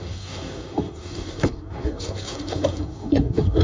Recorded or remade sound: remade